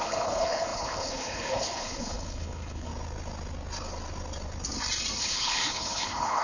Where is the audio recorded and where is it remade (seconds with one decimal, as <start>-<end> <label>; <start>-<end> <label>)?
0.0-2.9 remade; 2.9-5.2 recorded; 5.2-6.4 remade

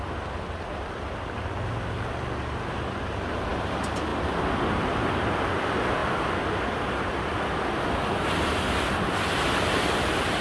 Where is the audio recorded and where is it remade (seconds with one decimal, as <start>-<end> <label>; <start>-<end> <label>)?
0.0-10.4 recorded

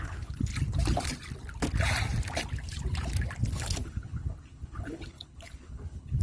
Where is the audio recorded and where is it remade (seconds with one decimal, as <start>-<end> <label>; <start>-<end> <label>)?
0.0-0.5 remade; 0.5-3.5 recorded; 3.5-6.2 remade

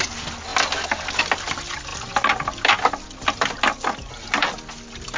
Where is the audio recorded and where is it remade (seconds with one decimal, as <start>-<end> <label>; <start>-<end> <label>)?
0.0-5.2 recorded

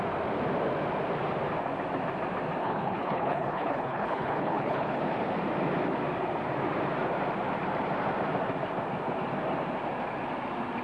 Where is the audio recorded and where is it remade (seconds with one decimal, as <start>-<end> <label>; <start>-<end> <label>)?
0.0-2.6 recorded; 2.6-5.0 remade; 5.0-10.8 recorded

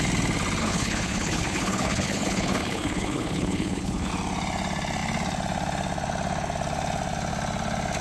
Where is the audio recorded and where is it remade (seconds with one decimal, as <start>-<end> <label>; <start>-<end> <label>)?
0.0-0.6 recorded; 0.6-4.1 remade; 4.1-8.0 recorded